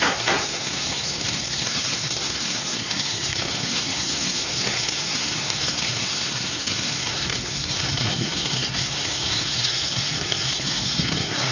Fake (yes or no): yes